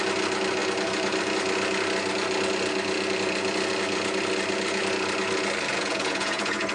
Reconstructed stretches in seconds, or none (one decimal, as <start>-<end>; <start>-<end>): 5.7-6.7